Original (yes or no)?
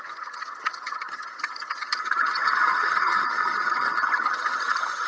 no